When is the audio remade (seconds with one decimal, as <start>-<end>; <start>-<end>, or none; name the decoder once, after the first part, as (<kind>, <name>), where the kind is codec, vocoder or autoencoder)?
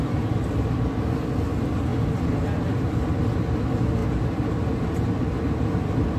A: none